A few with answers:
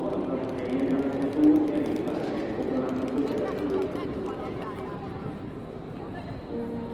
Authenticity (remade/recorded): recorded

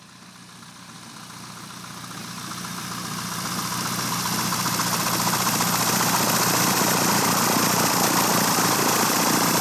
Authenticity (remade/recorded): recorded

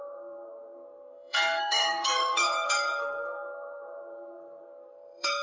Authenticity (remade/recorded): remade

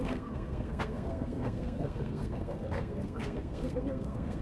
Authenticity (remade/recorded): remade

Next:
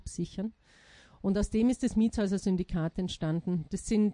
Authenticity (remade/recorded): recorded